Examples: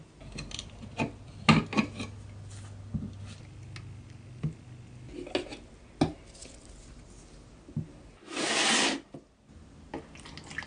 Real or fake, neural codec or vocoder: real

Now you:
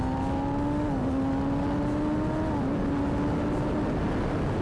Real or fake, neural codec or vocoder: real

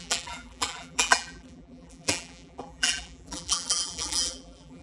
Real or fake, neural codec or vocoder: fake, vocoder, BigVGAN v2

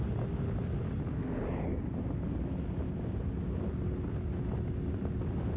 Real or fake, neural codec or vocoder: real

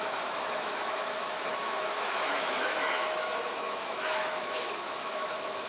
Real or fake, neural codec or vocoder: fake, autoencoder, DAC-VAE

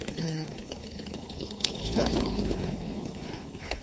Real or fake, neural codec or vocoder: fake, codec, HILCodec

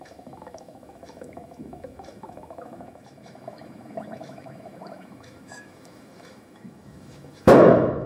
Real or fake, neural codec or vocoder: fake, autoencoder, DAC-VAE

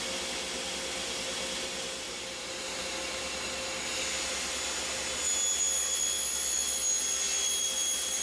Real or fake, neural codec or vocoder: real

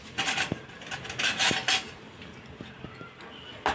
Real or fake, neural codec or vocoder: real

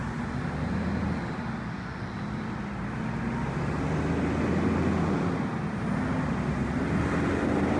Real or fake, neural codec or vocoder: real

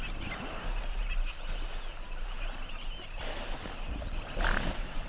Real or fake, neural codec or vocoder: real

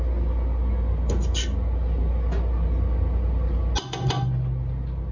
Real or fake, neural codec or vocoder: real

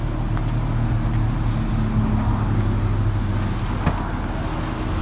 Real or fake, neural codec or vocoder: real